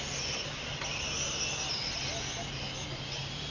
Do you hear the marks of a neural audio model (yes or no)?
no